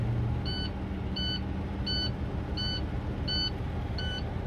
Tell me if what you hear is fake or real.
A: real